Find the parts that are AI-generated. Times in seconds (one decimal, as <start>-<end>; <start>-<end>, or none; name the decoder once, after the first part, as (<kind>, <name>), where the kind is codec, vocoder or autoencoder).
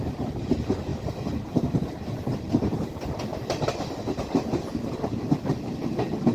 none